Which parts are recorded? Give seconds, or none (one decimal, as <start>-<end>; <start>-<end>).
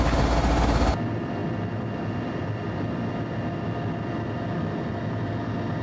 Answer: 0.0-5.8